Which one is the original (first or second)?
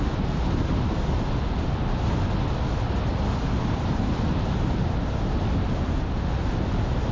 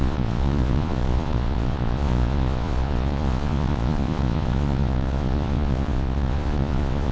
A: first